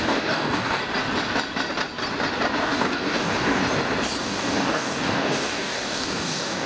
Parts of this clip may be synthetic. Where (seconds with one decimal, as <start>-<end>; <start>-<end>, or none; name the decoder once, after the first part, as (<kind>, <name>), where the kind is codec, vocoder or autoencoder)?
0.0-0.8 (codec, DAC); 2.6-3.6; 4.2-6.7